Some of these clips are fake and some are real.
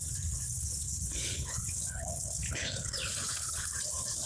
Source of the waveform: fake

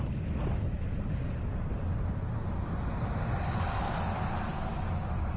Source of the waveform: real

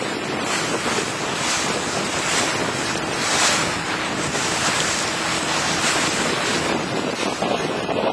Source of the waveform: real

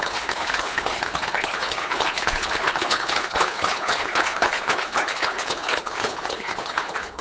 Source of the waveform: fake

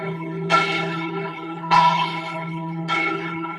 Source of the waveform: fake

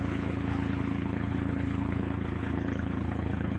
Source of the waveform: fake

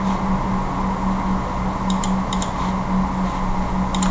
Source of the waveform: real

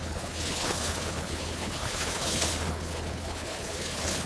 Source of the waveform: fake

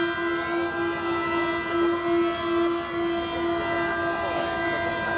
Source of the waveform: real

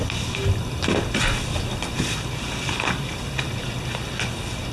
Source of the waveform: real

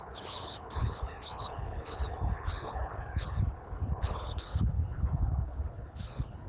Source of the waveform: fake